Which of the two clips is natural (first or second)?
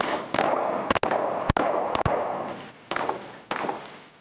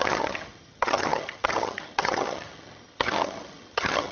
first